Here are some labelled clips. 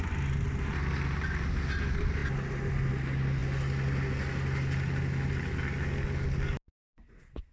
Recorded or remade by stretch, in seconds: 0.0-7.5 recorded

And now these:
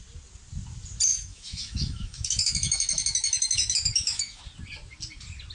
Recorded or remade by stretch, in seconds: 0.0-1.1 recorded; 1.1-4.4 remade; 4.4-5.5 recorded

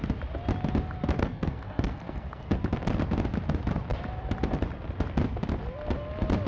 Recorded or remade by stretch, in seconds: 0.0-1.2 recorded; 1.2-2.5 remade; 2.5-6.5 recorded

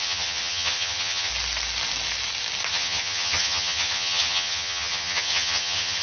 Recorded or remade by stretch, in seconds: 0.0-1.3 remade; 1.3-2.7 recorded; 2.7-6.0 remade

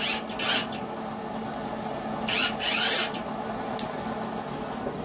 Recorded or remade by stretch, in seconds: 0.0-5.0 recorded

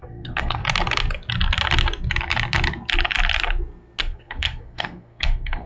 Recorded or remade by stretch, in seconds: 0.0-0.6 remade; 0.6-4.0 recorded; 4.0-5.7 remade

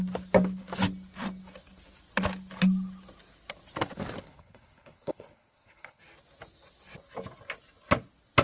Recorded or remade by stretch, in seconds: 0.0-4.2 recorded; 4.2-6.0 remade; 6.0-8.4 recorded